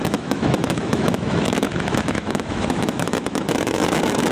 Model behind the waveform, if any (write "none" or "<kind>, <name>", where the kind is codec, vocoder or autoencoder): autoencoder, DAC-VAE